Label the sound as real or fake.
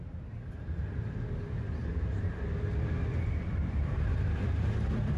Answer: fake